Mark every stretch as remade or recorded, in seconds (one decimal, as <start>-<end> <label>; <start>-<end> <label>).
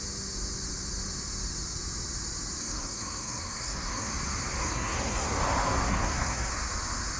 0.0-2.6 recorded; 2.6-4.1 remade; 4.1-4.6 recorded; 4.6-5.4 remade; 5.4-5.9 recorded; 5.9-6.5 remade; 6.5-7.2 recorded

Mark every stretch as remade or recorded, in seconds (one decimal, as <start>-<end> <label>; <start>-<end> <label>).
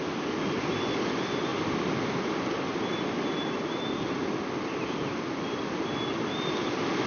0.0-7.1 recorded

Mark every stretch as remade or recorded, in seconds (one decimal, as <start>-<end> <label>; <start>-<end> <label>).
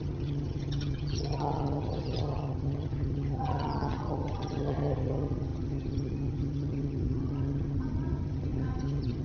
0.0-9.2 remade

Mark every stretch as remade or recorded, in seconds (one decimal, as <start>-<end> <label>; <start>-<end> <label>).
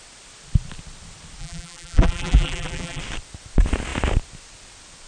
0.0-1.4 recorded; 1.4-3.0 remade; 3.0-5.1 recorded